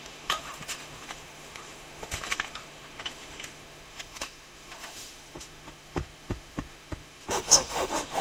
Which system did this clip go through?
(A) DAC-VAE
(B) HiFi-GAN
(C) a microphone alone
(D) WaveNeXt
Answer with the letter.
A